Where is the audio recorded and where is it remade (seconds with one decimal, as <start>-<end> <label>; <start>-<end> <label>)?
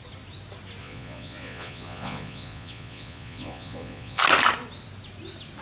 0.0-0.8 recorded; 0.8-4.2 remade; 4.2-5.6 recorded